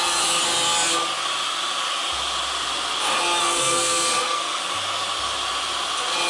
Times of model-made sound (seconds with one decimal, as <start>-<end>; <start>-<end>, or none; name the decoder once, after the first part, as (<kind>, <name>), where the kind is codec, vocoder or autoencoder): 3.4-4.6 (codec, SNAC)